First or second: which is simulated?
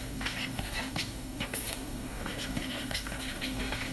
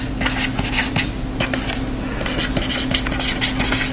first